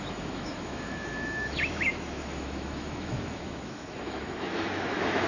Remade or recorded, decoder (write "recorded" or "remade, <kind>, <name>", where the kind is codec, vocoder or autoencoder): remade, autoencoder, DAC-VAE